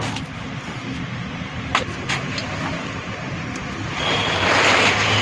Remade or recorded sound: recorded